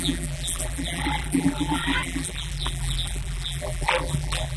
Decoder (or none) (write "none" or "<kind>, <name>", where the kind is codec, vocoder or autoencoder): vocoder, BigVGAN v2